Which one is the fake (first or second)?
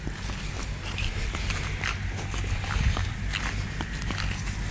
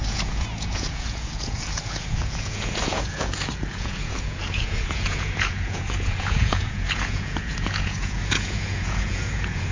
second